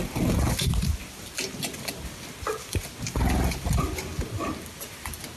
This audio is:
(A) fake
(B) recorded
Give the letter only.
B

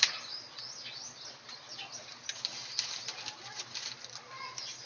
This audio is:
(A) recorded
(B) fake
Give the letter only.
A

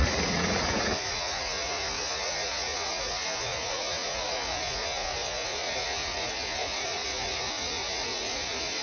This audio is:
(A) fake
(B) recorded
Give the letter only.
A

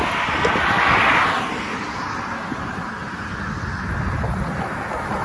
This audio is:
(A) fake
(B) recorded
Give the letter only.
B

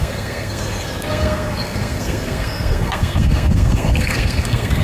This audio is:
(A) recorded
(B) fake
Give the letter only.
B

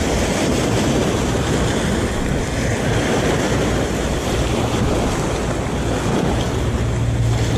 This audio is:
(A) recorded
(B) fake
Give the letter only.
A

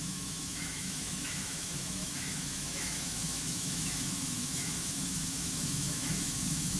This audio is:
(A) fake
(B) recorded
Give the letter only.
A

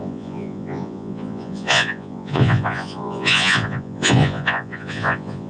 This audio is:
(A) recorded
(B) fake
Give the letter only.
B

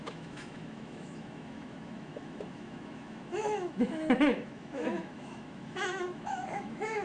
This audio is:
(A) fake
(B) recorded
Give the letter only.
A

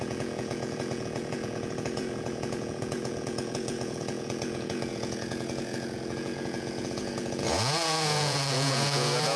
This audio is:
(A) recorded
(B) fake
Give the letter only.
B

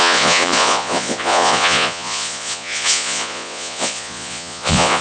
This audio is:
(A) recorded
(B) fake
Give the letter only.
B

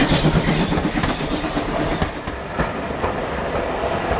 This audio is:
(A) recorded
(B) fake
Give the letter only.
A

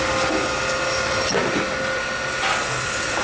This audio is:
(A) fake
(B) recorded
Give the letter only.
B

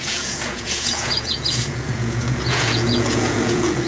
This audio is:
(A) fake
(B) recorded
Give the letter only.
A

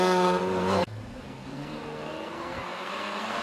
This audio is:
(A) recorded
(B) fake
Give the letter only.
B